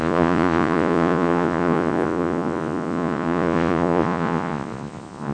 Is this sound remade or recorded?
remade